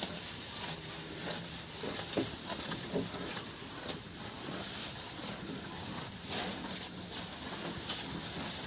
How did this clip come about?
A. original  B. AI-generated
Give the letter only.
B